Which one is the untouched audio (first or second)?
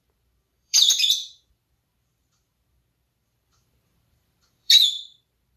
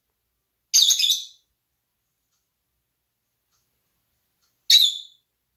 second